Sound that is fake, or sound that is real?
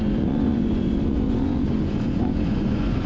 fake